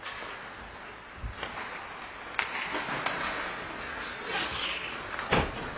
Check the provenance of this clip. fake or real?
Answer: real